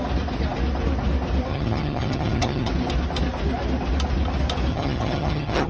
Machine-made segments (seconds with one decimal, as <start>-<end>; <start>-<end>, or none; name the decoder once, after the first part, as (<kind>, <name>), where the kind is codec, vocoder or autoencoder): 1.5-2.7 (vocoder, HiFi-GAN); 4.7-5.7